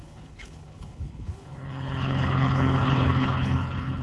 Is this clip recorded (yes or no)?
no